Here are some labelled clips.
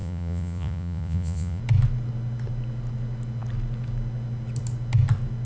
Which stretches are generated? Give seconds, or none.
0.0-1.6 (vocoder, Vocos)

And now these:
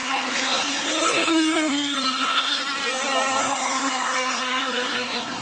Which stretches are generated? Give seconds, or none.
0.0-2.6 (codec, SNAC); 3.4-5.4

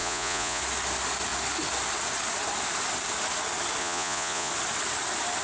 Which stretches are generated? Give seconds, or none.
0.0-0.6 (vocoder, Vocos); 3.8-4.5

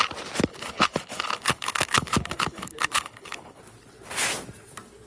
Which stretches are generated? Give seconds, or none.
0.5-3.6 (codec, HILCodec)

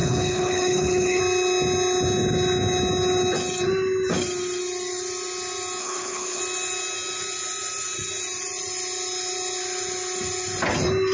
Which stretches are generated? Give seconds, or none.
0.0-1.2 (codec, HILCodec); 5.8-6.4

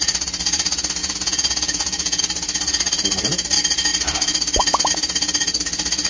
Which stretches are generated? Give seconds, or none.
1.0-2.2 (vocoder, Vocos)

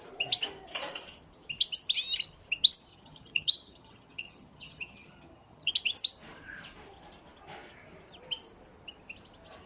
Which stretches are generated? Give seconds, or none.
2.9-5.7 (vocoder, HiFi-GAN)